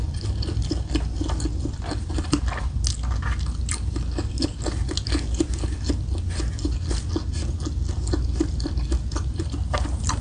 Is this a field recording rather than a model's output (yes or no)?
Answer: yes